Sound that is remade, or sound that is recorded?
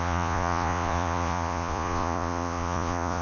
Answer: remade